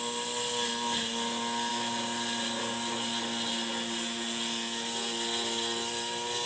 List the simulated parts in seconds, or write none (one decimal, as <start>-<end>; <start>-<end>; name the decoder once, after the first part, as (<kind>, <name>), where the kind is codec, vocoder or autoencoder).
none